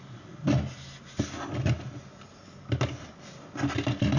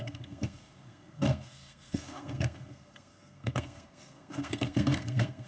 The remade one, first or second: second